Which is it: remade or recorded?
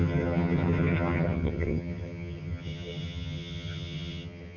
remade